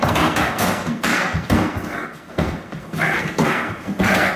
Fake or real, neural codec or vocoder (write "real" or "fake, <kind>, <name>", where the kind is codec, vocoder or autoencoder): fake, codec, SNAC